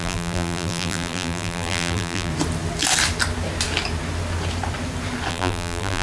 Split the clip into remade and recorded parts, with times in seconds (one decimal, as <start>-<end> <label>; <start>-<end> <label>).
0.0-2.3 remade; 2.3-5.3 recorded; 5.3-6.0 remade